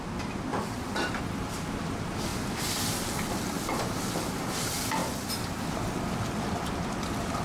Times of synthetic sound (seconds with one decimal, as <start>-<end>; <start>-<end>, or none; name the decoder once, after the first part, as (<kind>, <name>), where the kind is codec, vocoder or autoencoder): 0.5-1.2 (vocoder, BigVGAN v2); 2.3-3.4; 5.0-6.4